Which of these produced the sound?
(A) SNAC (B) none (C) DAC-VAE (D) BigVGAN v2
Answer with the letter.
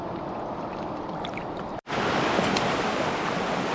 D